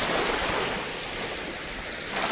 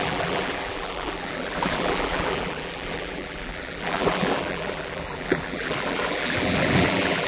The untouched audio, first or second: first